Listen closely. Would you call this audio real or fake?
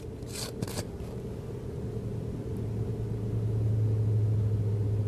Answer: real